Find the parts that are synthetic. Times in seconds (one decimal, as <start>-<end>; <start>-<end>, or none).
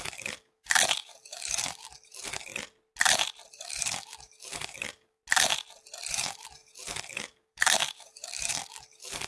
0.0-2.5; 3.5-5.2; 6.1-9.3